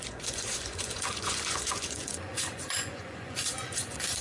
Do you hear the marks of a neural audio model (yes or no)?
yes